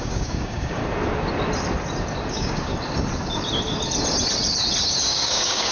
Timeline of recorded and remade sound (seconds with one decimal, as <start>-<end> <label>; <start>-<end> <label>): 0.0-0.8 remade; 0.8-2.3 recorded; 2.3-2.7 remade; 2.7-5.0 recorded; 5.0-5.7 remade